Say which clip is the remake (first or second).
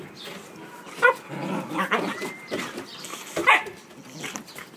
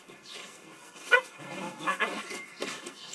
second